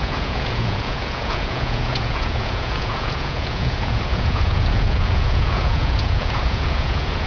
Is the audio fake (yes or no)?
yes